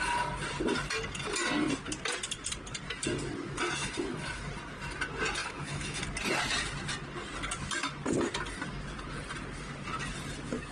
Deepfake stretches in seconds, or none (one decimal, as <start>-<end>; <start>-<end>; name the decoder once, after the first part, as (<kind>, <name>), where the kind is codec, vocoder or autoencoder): 3.8-4.4 (autoencoder, DAC-VAE); 5.4-6.0